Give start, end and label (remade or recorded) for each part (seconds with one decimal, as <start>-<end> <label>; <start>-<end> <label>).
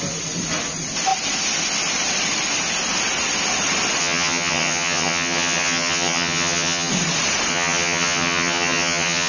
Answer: 0.0-4.0 recorded; 4.0-6.9 remade; 6.9-7.5 recorded; 7.5-9.3 remade